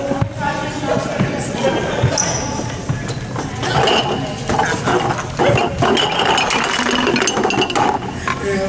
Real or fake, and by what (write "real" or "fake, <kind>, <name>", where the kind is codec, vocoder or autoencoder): real